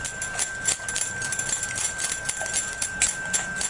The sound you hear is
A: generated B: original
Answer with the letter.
B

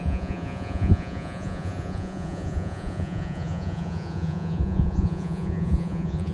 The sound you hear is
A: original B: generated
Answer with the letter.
B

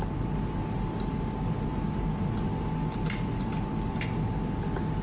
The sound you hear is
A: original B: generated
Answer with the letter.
A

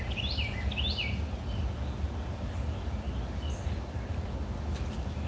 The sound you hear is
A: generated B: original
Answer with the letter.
B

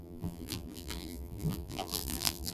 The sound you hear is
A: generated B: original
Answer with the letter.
A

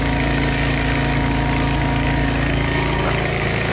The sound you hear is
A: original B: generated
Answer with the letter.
B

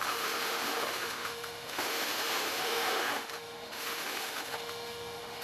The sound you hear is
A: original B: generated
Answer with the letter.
B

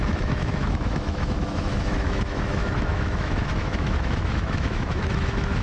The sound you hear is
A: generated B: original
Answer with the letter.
A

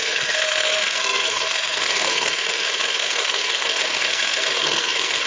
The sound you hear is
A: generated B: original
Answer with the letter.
A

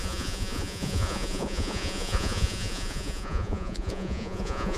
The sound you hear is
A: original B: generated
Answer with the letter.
B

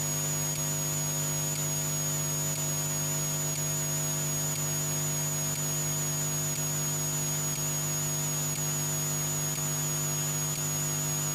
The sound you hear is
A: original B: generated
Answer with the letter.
A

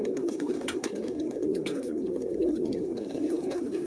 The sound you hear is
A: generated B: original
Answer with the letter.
A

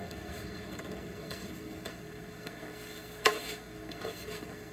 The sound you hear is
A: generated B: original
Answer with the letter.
A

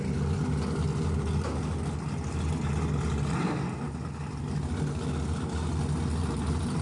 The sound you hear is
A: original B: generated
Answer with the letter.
A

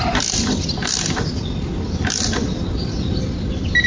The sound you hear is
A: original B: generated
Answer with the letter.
A